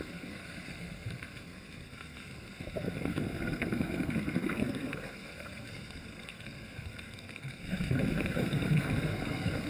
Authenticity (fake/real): fake